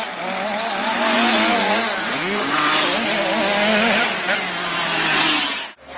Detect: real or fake real